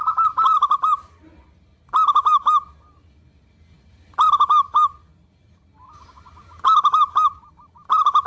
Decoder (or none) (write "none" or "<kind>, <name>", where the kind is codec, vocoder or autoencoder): none